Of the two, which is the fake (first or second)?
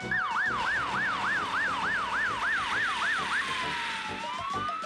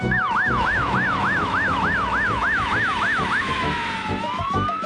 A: second